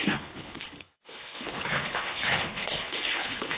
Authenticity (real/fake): fake